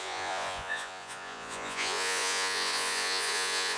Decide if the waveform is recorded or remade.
remade